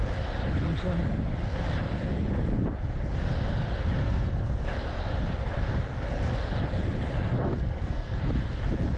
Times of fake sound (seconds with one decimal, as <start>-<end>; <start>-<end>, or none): 4.0-4.6; 7.3-8.2